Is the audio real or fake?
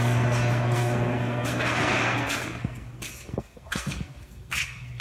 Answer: fake